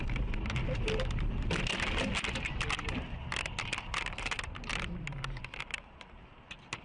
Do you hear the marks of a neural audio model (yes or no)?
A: no